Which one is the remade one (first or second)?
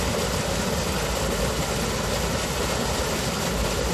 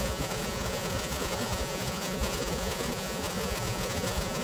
second